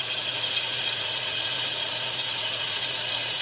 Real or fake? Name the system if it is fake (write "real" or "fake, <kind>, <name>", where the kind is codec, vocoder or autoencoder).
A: fake, vocoder, Vocos